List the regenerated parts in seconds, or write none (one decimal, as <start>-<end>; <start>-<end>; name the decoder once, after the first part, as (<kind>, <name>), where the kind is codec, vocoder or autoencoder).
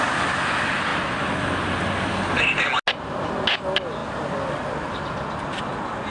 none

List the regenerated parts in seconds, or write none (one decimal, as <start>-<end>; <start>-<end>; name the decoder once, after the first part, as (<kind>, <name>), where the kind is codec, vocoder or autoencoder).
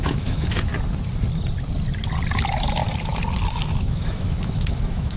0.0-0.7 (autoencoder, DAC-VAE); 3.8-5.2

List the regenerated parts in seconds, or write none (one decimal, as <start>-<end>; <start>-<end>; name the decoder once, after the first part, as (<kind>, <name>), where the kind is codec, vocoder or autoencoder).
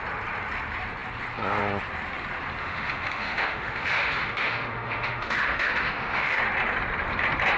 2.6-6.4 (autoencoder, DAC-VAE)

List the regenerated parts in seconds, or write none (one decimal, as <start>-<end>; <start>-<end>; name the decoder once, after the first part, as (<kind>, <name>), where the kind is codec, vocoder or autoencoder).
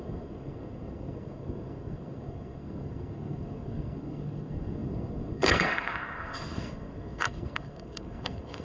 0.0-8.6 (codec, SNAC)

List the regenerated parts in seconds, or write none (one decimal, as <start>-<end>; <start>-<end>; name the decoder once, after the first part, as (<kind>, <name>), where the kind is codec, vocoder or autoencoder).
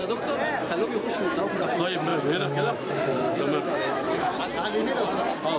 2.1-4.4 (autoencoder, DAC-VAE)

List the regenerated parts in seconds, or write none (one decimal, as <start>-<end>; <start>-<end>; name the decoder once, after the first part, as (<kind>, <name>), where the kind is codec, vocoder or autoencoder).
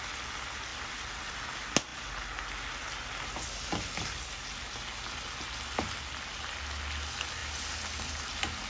none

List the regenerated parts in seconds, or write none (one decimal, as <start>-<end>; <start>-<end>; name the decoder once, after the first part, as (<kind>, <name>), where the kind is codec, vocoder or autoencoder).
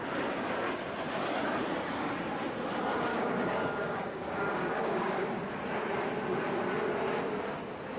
3.1-5.4 (codec, DAC)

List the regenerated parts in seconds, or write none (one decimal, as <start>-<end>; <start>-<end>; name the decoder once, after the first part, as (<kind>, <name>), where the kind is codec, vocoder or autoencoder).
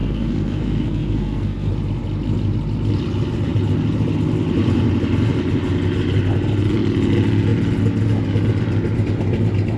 0.0-1.7 (codec, SNAC)